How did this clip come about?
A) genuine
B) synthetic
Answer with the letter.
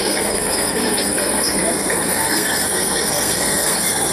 B